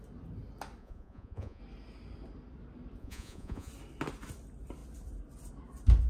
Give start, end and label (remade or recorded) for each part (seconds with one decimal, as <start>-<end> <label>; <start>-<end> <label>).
0.0-0.8 recorded; 0.8-1.6 remade; 1.6-3.0 recorded; 3.0-3.7 remade; 3.7-6.1 recorded